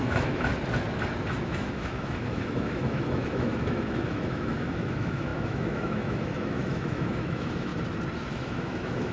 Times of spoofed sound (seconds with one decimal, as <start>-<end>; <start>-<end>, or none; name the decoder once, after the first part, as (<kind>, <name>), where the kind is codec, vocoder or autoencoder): 0.0-0.5 (autoencoder, DAC-VAE); 1.3-7.7; 8.3-9.1